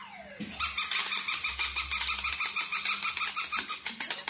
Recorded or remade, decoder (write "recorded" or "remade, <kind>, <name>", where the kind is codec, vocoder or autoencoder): recorded